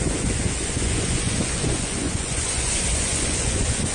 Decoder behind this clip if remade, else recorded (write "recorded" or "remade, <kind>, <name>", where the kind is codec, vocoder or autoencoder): remade, vocoder, Vocos